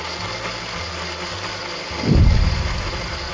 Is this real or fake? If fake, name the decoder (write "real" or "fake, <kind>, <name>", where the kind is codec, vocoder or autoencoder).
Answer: real